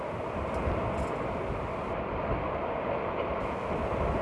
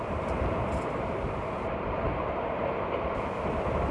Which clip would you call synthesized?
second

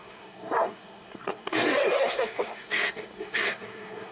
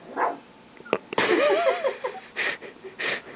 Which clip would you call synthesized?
first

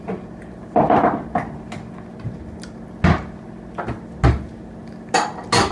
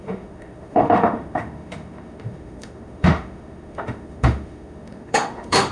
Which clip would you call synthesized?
second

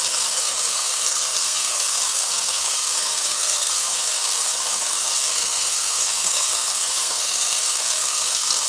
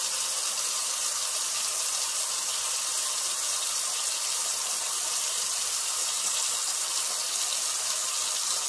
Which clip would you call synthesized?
first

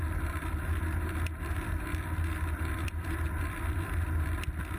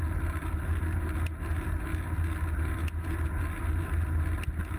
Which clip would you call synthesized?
first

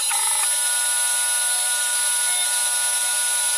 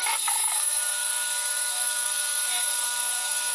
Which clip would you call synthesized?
second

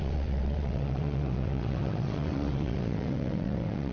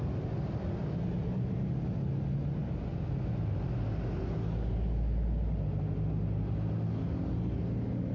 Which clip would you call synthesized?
first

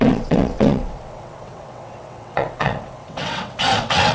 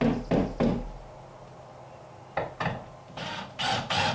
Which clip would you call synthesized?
first